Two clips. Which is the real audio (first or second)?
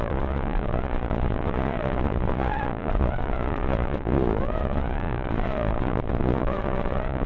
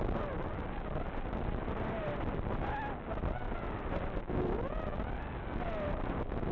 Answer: second